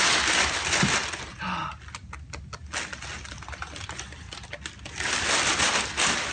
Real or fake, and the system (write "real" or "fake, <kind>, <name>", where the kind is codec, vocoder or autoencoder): real